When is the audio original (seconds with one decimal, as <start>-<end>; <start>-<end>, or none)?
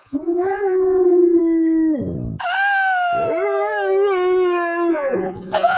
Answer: 1.4-4.9